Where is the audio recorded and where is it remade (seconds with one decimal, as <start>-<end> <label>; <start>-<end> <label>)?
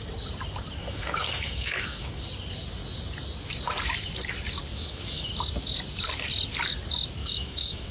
0.0-0.8 recorded; 0.8-2.2 remade; 2.2-4.7 recorded; 4.7-5.3 remade; 5.3-7.2 recorded; 7.2-7.9 remade